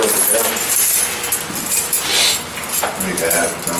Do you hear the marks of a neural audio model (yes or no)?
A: no